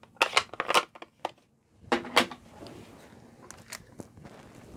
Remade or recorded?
recorded